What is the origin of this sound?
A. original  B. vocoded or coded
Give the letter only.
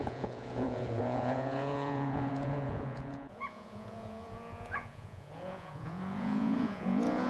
B